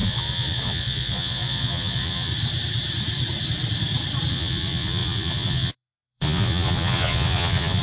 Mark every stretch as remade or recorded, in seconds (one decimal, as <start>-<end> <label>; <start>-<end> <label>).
0.0-2.3 remade; 2.3-4.3 recorded; 4.3-7.8 remade